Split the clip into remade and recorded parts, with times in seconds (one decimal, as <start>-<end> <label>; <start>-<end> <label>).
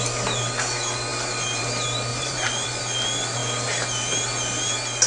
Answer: 0.0-2.1 recorded; 2.1-2.8 remade; 2.8-5.1 recorded